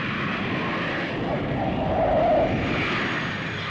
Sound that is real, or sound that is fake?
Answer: real